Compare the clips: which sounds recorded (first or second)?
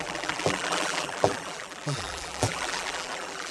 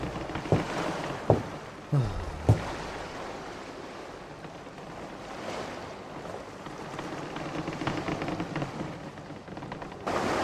second